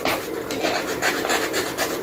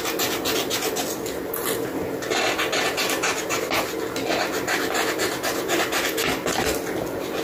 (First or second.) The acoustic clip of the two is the second